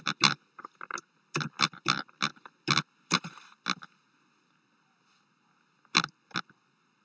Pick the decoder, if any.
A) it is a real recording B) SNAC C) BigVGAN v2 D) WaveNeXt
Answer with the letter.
C